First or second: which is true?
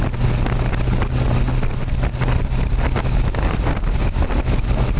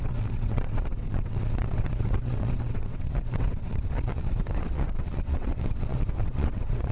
first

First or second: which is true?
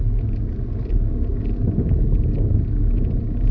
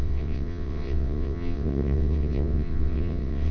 first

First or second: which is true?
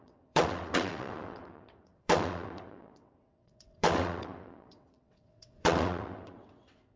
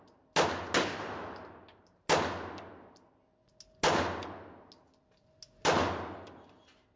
second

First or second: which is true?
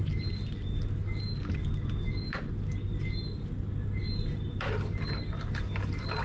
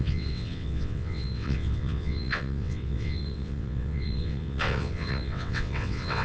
first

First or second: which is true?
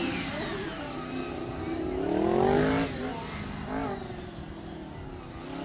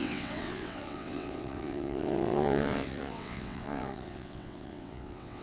first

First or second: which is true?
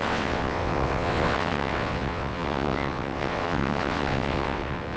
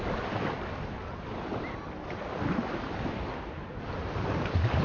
second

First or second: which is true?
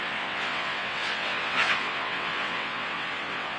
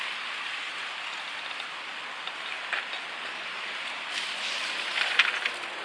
second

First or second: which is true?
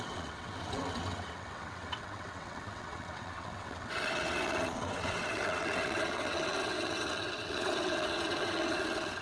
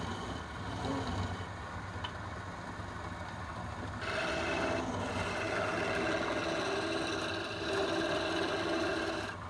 second